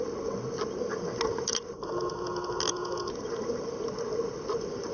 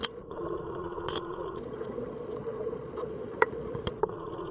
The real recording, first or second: first